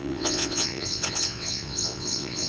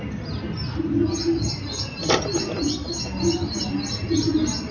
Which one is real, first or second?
second